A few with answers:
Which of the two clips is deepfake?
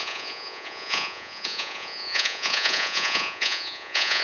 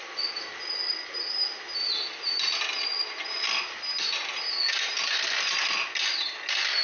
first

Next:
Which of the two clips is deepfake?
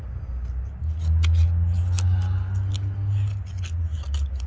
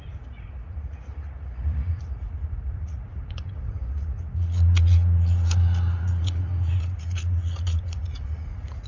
second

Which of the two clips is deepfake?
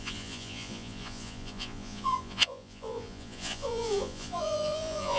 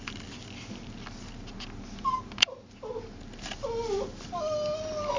first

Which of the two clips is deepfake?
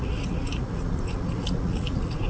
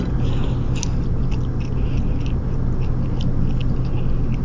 first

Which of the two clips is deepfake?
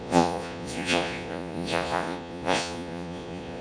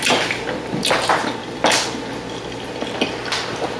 first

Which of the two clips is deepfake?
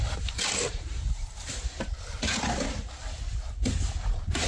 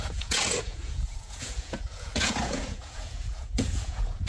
second